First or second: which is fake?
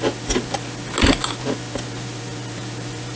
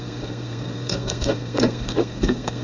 second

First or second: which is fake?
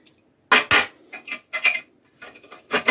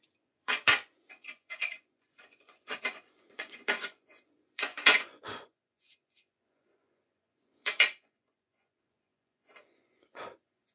second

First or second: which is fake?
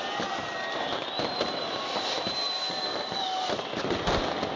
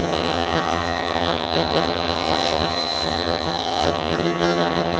second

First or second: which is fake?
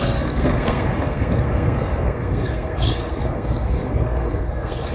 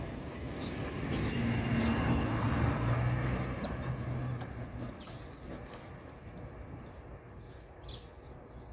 first